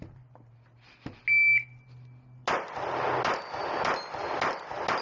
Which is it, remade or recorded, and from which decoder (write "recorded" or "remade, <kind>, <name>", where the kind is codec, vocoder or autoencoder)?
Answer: recorded